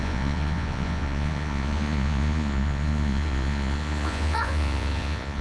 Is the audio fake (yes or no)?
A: yes